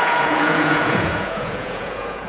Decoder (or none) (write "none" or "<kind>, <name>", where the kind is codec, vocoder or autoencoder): vocoder, Vocos